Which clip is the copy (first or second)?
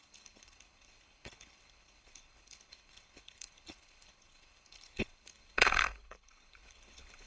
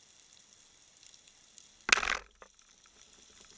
first